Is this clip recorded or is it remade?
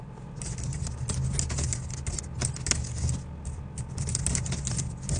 recorded